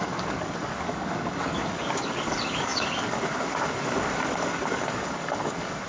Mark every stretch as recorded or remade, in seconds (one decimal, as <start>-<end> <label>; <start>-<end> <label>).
0.0-5.9 remade

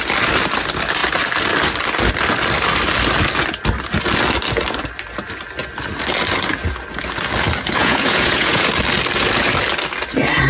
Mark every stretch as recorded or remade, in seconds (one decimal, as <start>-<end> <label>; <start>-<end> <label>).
0.0-7.8 recorded; 7.8-8.7 remade; 8.7-10.5 recorded

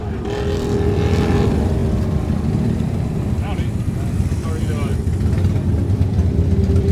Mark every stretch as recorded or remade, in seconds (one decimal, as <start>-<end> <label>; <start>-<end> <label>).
0.0-6.9 recorded